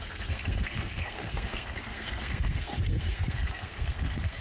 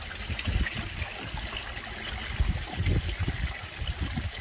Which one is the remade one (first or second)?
first